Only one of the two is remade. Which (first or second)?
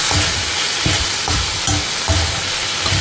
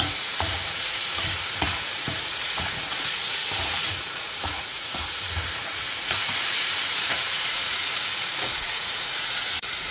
second